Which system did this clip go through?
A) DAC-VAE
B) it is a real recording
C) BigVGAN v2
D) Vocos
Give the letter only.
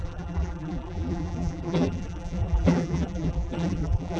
C